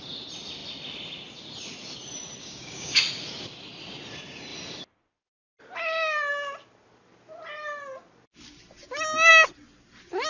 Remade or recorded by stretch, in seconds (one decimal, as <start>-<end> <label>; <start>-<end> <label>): 0.0-2.4 recorded; 2.4-3.0 remade; 3.0-10.3 recorded